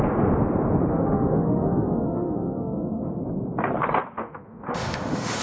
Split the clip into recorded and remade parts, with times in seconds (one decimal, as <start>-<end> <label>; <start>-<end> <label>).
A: 0.0-0.8 recorded; 0.8-3.2 remade; 3.2-4.2 recorded; 4.2-5.4 remade